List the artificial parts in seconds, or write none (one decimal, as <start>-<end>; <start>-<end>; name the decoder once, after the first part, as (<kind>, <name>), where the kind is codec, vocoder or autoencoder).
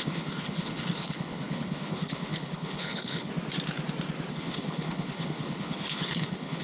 0.0-3.3 (codec, HILCodec); 4.3-6.6